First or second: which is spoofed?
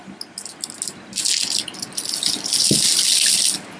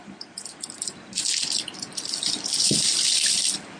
second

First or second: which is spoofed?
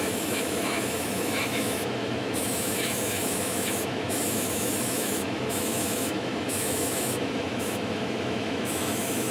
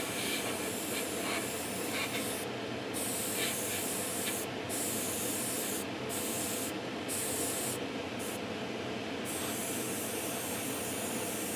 first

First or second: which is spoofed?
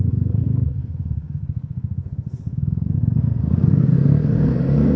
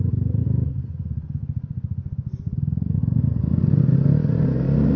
first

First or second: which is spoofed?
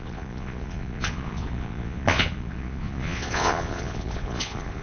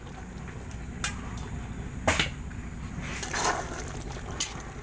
first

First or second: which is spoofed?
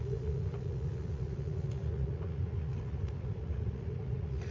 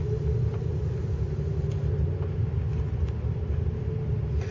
first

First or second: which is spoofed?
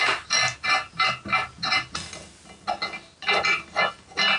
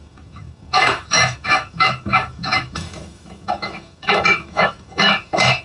second